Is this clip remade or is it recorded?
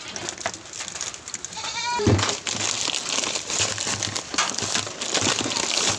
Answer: recorded